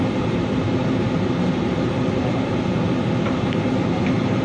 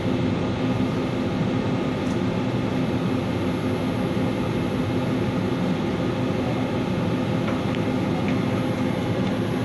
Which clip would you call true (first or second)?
second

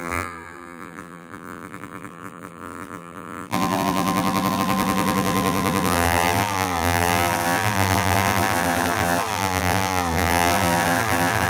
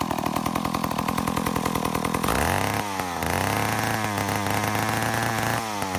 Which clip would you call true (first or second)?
second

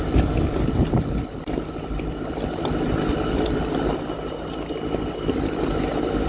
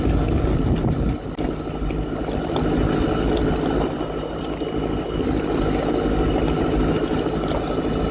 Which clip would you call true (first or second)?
second